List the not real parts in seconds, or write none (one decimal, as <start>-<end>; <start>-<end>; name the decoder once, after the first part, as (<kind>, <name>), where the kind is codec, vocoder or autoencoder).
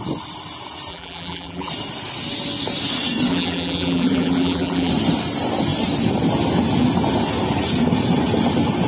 0.9-1.7 (vocoder, BigVGAN v2); 3.3-4.9